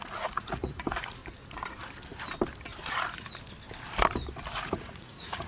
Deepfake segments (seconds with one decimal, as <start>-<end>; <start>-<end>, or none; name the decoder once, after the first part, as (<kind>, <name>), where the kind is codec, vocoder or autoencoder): 0.0-1.2 (vocoder, Vocos); 4.5-5.5